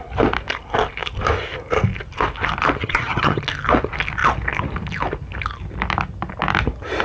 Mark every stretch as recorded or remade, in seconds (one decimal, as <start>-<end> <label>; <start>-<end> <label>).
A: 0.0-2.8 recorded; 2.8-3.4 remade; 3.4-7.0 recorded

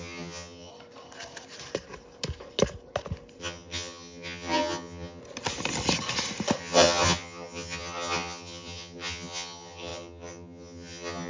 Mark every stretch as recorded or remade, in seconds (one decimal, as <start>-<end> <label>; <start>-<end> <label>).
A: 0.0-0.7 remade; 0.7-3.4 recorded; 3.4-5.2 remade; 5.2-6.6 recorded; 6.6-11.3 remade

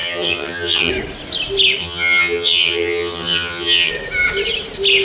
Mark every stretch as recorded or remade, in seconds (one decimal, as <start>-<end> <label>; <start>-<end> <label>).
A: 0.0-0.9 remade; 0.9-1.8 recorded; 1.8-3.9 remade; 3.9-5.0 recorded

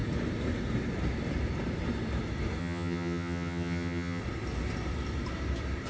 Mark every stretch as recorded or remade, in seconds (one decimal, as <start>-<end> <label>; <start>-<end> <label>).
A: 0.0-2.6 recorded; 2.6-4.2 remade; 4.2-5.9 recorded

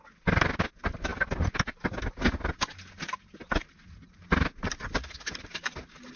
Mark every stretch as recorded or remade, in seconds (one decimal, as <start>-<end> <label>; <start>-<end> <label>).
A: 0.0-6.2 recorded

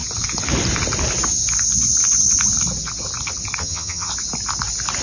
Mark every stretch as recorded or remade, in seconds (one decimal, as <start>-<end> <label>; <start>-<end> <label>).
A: 0.0-3.6 recorded; 3.6-4.1 remade; 4.1-5.0 recorded

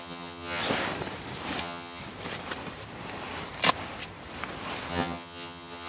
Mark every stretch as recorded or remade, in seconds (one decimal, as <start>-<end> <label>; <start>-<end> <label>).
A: 0.0-0.6 remade; 0.6-1.6 recorded; 1.6-2.0 remade; 2.0-4.9 recorded; 4.9-5.9 remade